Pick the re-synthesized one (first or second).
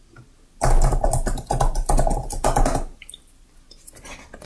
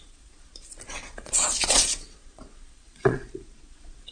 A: second